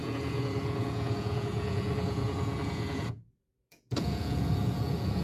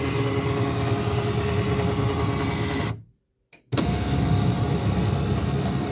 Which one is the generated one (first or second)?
first